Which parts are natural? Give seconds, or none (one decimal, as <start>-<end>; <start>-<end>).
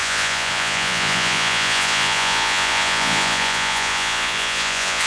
none